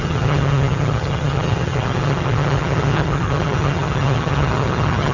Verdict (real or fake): fake